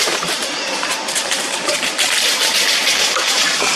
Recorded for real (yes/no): no